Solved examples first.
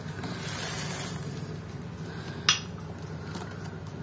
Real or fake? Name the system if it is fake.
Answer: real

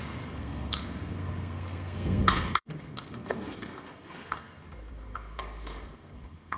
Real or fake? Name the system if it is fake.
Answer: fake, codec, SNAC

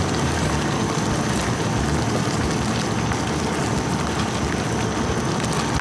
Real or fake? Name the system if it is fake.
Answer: real